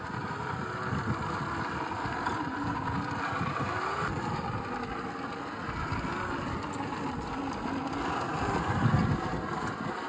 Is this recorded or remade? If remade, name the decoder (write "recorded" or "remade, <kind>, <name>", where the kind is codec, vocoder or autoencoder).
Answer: recorded